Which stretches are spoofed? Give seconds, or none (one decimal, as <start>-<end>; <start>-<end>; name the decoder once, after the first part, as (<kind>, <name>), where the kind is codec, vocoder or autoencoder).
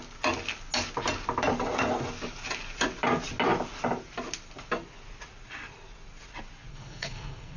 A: 6.7-7.6 (codec, SNAC)